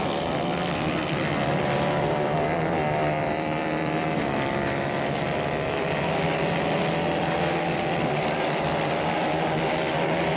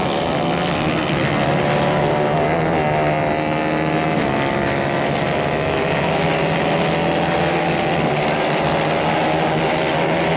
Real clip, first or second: second